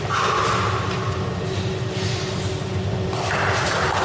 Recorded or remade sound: recorded